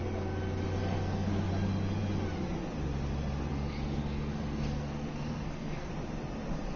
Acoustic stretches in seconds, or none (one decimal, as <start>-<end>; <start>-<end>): 0.0-0.8; 1.5-3.5; 5.9-6.8